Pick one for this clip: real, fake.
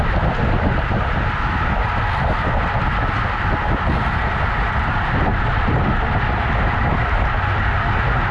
real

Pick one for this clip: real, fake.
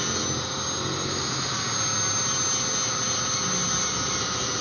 real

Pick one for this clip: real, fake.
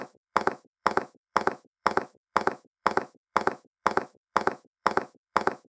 fake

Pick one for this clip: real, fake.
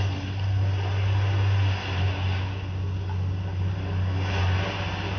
real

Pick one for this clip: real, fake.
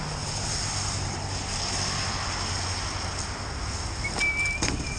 real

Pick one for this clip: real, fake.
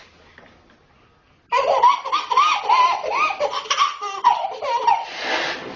real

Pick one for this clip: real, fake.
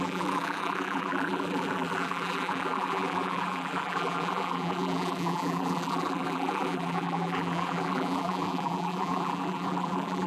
fake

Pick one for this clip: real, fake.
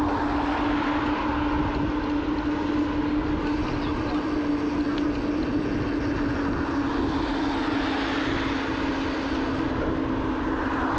real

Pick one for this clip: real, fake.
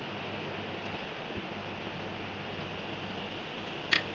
real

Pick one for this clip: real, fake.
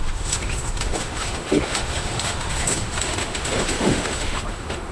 fake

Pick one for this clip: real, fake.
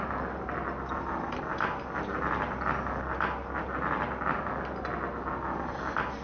real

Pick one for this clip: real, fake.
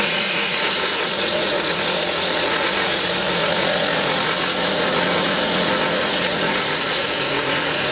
fake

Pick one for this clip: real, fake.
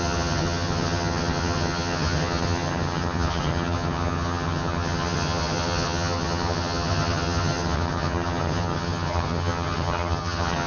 fake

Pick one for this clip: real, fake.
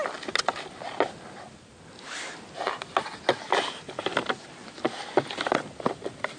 real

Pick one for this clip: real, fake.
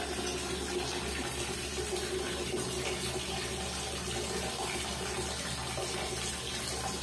real